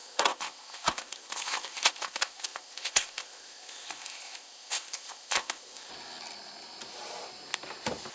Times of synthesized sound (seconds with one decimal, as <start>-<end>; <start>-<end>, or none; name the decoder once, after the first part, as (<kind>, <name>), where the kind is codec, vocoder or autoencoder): 0.0-5.9 (codec, ZipCodec)